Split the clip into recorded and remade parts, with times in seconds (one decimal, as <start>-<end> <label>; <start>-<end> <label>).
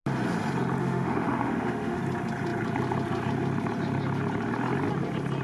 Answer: 0.0-0.8 recorded; 0.8-2.0 remade; 2.0-5.4 recorded